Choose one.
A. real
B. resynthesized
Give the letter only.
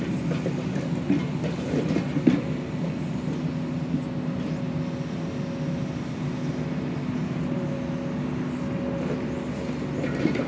A